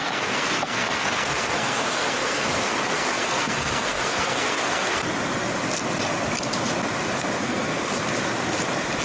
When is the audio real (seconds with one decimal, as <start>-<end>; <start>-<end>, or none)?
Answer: 5.0-7.4; 7.9-9.0

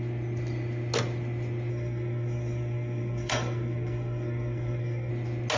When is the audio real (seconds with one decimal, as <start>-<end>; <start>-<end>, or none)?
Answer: 0.0-1.7; 5.1-5.6

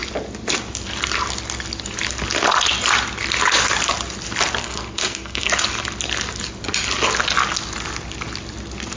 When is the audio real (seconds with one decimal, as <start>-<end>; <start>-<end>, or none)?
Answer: 0.0-4.6; 5.5-9.0

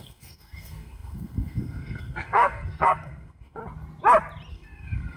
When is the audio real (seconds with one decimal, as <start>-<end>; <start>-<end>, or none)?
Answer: 3.6-4.5

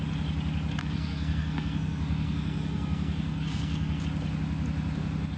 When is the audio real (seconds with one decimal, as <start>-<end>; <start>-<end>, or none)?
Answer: 0.0-0.8; 4.0-5.4

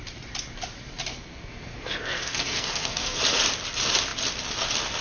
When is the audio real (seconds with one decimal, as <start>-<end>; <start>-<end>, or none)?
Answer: 0.0-1.1; 3.2-5.0